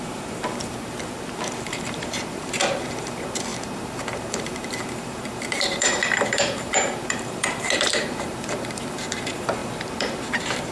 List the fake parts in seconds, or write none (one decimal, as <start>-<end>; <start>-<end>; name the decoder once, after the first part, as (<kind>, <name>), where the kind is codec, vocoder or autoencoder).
0.0-10.7 (vocoder, BigVGAN v2)